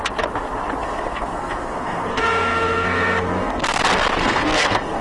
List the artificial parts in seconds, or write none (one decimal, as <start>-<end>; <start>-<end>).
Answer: 0.8-3.8; 4.2-5.0